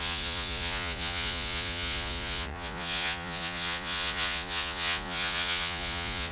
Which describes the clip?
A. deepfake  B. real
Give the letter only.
A